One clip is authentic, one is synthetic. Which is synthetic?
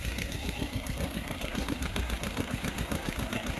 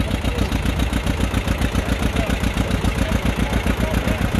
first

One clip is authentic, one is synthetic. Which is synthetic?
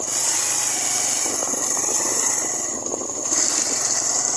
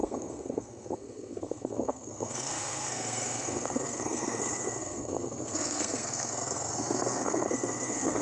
second